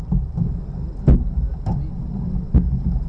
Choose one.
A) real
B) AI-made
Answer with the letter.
A